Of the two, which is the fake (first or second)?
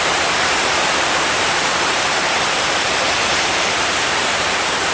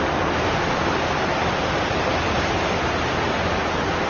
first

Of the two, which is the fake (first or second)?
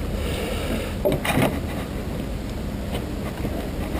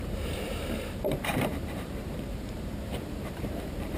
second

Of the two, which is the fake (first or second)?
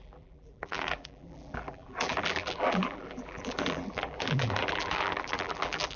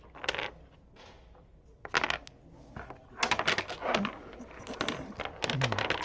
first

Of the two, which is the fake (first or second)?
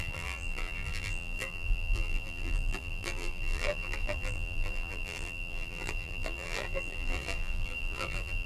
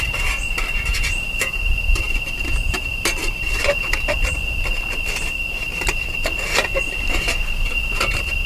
first